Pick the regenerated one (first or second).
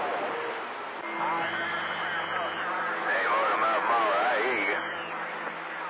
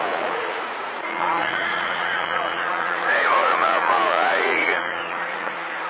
second